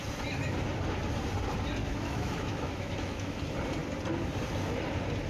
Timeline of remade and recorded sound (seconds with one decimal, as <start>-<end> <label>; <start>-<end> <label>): 0.0-1.8 recorded; 1.8-3.4 remade; 3.4-5.3 recorded